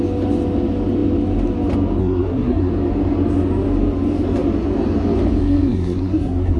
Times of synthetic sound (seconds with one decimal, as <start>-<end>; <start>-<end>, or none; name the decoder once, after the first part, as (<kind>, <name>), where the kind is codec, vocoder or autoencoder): 2.0-2.7 (codec, SNAC); 5.4-6.6